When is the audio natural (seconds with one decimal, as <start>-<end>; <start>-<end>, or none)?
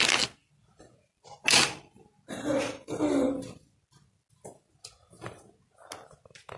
0.0-6.6